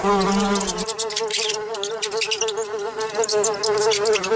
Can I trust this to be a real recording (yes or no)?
yes